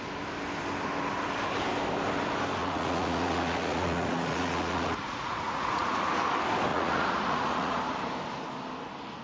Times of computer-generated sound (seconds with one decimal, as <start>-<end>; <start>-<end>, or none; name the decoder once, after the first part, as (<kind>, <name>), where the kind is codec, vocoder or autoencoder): 2.6-6.1 (vocoder, Vocos); 6.7-7.8